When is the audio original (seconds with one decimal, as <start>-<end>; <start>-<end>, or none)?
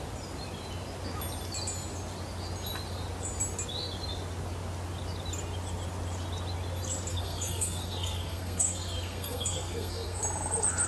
0.0-7.1; 10.2-10.9